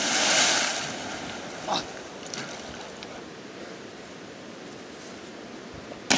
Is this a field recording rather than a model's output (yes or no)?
yes